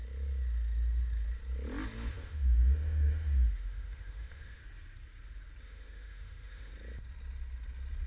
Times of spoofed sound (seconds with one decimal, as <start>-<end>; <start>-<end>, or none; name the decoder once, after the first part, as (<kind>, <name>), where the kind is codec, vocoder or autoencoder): 2.1-4.6 (autoencoder, DAC-VAE); 5.6-6.7